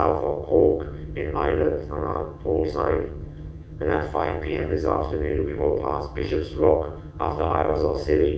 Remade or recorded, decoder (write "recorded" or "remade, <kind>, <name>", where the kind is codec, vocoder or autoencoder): remade, vocoder, HiFi-GAN